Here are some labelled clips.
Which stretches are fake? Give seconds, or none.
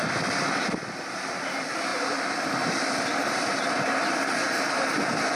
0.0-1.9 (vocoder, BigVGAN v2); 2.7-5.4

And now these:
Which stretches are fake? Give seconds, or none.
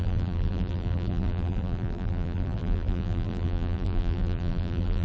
0.0-5.0 (vocoder, BigVGAN v2)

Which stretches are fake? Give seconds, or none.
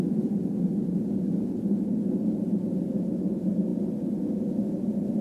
none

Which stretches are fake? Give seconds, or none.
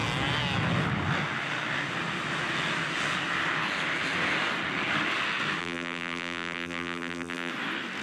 5.6-7.5 (vocoder, BigVGAN v2)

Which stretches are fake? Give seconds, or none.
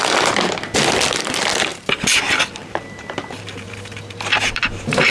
1.7-2.2 (vocoder, BigVGAN v2); 2.6-5.1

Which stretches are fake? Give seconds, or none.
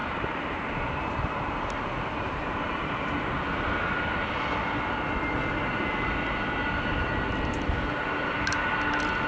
0.0-3.0 (vocoder, BigVGAN v2)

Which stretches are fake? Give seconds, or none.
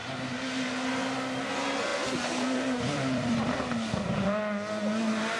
0.0-1.5 (vocoder, BigVGAN v2); 1.9-4.4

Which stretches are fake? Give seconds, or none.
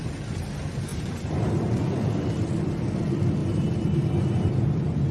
0.9-1.5 (vocoder, BigVGAN v2); 3.4-4.5